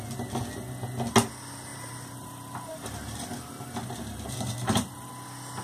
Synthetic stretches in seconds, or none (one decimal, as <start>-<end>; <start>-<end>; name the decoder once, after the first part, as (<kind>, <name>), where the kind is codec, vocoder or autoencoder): 1.7-5.1 (vocoder, BigVGAN v2)